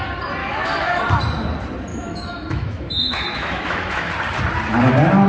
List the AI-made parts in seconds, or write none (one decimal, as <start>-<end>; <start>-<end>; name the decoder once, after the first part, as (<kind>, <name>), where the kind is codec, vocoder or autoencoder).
0.4-1.0 (autoencoder, DAC-VAE); 1.9-4.1